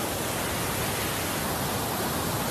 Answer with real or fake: real